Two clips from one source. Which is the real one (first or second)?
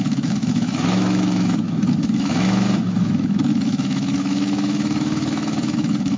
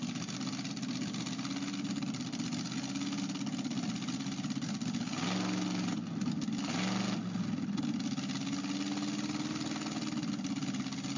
second